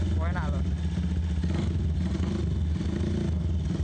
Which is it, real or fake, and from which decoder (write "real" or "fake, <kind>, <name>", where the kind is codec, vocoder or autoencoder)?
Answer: real